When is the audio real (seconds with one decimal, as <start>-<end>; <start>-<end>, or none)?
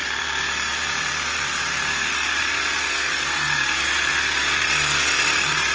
none